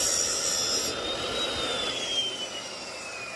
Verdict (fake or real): real